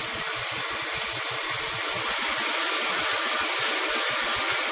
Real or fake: real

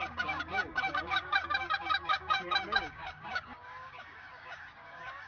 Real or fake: fake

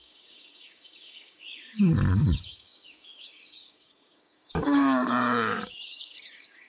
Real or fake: fake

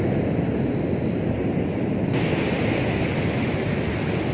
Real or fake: real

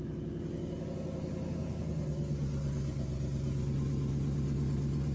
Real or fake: real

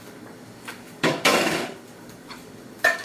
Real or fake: fake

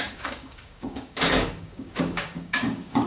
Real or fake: fake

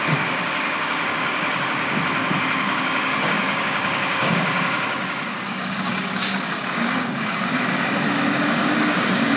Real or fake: fake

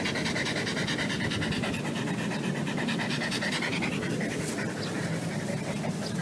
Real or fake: real